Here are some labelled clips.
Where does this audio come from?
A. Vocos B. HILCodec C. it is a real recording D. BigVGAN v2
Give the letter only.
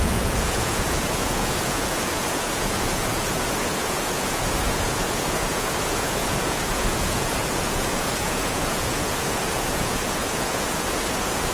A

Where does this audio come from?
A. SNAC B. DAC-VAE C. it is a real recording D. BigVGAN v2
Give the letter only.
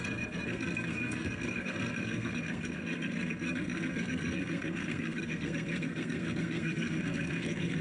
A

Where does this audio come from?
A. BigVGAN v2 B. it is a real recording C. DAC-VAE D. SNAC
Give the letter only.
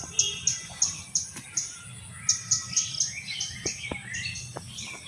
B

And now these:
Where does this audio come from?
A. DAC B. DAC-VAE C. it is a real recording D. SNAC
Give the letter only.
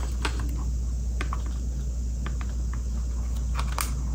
C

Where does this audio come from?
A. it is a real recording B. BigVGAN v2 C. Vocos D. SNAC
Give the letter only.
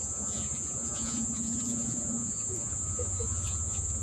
C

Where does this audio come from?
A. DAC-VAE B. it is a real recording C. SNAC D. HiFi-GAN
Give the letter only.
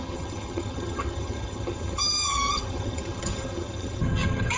D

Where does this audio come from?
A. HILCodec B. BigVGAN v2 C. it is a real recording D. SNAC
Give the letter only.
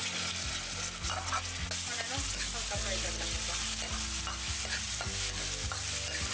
C